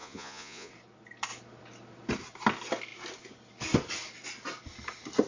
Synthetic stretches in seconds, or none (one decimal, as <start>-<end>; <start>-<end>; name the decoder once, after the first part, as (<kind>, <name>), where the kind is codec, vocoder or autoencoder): 0.0-0.7 (vocoder, Vocos)